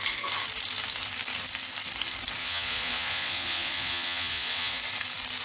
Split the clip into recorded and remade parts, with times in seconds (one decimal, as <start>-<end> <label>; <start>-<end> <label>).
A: 0.0-2.4 recorded; 2.4-4.8 remade; 4.8-5.4 recorded